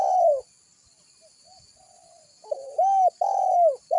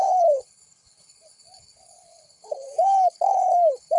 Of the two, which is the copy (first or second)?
second